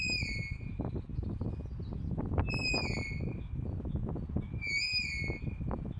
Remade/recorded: recorded